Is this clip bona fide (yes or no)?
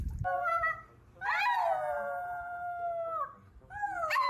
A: yes